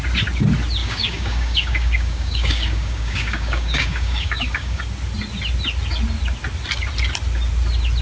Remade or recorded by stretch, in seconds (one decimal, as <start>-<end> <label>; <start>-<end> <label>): 0.0-0.8 recorded; 0.8-4.8 remade; 4.8-8.0 recorded